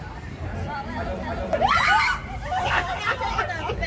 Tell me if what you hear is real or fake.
real